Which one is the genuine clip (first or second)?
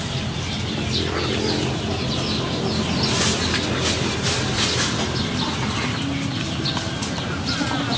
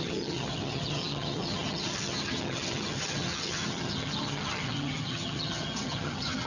first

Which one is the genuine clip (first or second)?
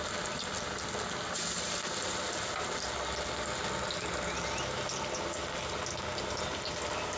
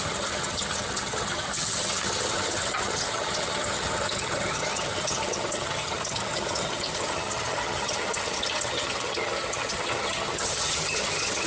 first